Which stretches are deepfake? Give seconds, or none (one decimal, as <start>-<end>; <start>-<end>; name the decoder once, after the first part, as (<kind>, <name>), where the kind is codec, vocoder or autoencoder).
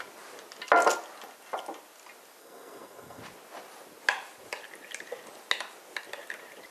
2.4-3.2 (codec, SNAC)